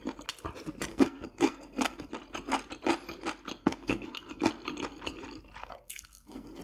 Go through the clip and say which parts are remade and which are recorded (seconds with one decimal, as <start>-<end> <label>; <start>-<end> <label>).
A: 0.0-0.9 recorded; 0.9-2.1 remade; 2.1-3.6 recorded; 3.6-4.4 remade; 4.4-5.6 recorded; 5.6-6.6 remade